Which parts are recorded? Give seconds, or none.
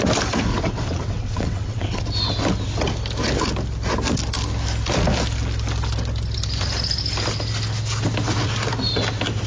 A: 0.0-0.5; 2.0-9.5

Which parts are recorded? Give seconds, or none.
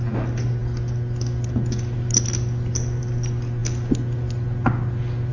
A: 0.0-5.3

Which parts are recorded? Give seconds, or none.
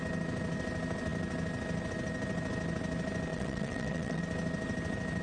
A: 0.0-3.3; 4.2-5.2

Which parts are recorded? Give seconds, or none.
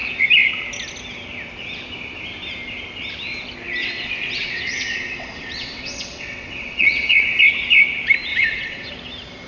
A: 0.0-3.8; 7.4-8.3; 8.9-9.5